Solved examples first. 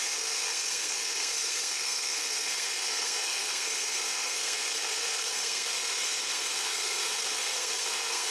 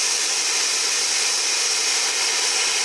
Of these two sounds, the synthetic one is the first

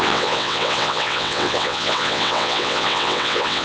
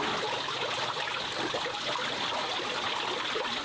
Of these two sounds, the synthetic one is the first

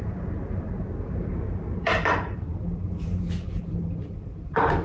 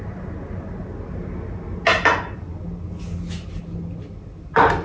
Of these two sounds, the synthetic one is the first